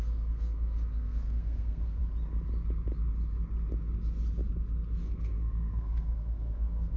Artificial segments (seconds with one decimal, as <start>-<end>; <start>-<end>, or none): 0.0-2.0; 5.0-7.0